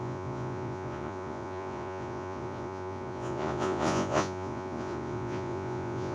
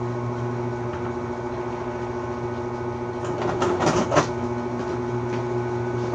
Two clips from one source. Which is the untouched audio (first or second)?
second